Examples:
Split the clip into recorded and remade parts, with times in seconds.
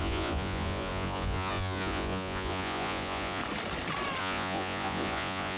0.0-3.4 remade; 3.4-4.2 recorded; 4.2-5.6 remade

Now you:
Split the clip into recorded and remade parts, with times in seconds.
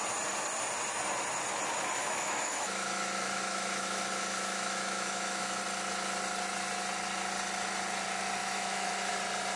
0.0-2.0 recorded; 2.0-5.6 remade; 5.6-8.4 recorded; 8.4-9.1 remade; 9.1-9.6 recorded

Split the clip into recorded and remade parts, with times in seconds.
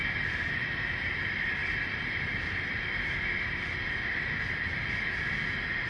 0.0-0.7 remade; 0.7-1.6 recorded; 1.6-5.1 remade; 5.1-5.9 recorded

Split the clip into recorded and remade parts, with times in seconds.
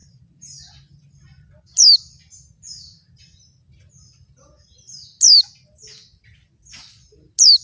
0.0-7.6 recorded